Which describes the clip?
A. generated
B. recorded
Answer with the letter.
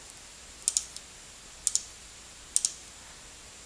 B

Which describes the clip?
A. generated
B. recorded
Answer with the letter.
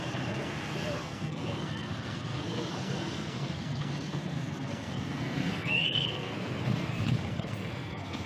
A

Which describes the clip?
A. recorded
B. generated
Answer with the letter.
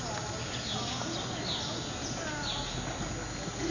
A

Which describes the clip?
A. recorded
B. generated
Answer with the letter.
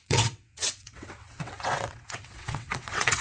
B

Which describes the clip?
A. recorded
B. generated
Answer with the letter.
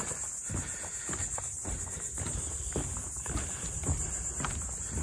A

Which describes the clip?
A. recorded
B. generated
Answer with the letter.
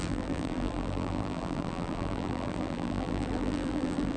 B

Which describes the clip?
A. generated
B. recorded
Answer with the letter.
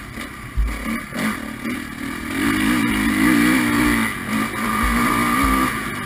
B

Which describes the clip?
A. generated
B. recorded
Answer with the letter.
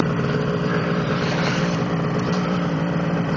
A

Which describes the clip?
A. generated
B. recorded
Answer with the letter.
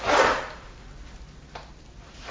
B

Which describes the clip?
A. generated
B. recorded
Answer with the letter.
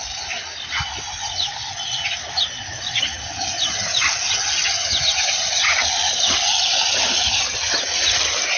B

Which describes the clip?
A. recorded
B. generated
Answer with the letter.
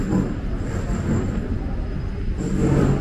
A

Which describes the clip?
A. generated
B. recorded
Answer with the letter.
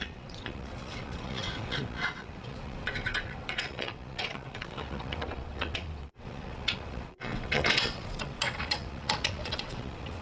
A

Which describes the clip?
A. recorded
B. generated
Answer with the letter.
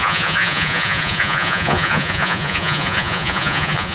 B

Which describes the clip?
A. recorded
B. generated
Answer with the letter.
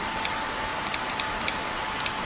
A